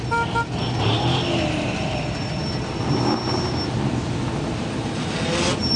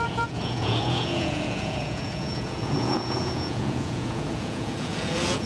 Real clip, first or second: first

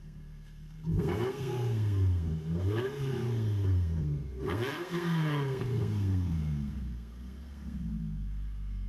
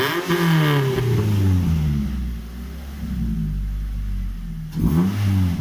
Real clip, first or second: second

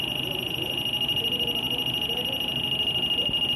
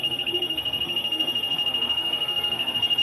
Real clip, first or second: first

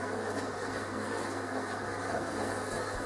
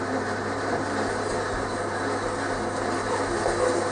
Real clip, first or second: second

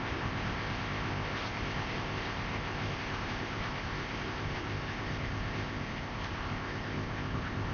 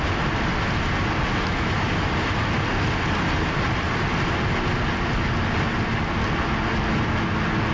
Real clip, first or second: second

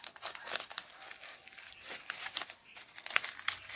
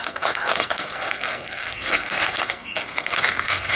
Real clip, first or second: first